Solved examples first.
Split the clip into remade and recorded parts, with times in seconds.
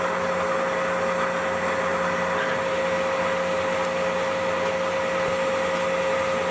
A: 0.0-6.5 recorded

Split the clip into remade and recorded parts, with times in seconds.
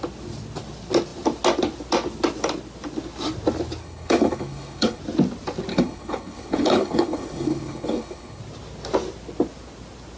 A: 0.0-3.8 recorded; 3.8-5.0 remade; 5.0-5.7 recorded; 5.7-8.4 remade; 8.4-10.2 recorded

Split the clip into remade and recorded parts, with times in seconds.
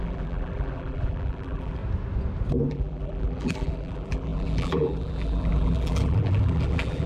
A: 0.0-1.8 remade; 1.8-2.7 recorded; 2.7-7.1 remade